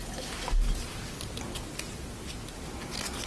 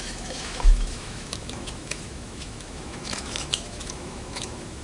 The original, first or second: first